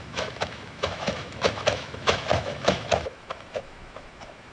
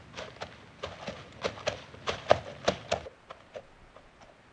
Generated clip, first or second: first